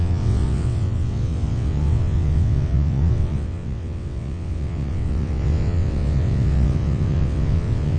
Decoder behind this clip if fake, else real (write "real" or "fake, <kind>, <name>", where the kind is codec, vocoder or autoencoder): fake, vocoder, WaveNeXt